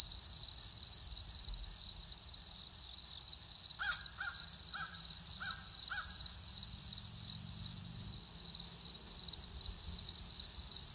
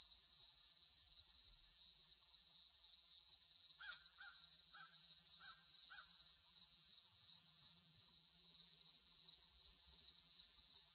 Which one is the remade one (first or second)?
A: second